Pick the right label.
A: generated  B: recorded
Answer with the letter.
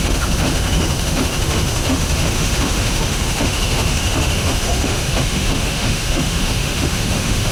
A